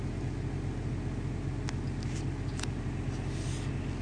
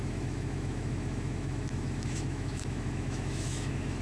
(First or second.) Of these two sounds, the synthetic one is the second